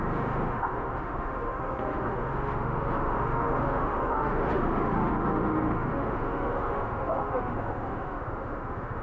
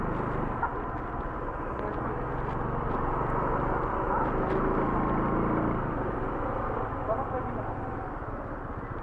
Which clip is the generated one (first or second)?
first